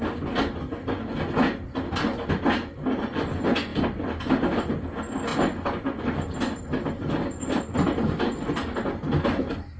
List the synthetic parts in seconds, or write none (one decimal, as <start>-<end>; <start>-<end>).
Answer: 3.7-4.7; 5.3-7.6